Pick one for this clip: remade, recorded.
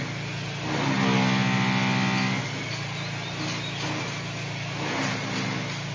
recorded